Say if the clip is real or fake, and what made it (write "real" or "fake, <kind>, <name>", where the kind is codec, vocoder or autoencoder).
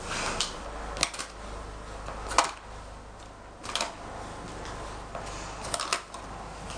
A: real